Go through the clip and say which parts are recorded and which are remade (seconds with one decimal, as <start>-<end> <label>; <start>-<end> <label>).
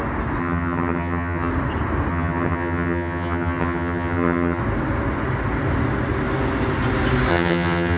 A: 0.0-0.4 recorded; 0.4-1.5 remade; 1.5-2.1 recorded; 2.1-4.6 remade; 4.6-7.3 recorded; 7.3-8.0 remade